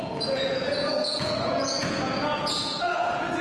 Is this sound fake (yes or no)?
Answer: yes